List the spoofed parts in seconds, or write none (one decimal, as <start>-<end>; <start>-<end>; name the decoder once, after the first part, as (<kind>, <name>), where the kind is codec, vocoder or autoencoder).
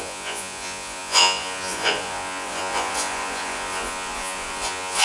0.0-5.0 (vocoder, Vocos)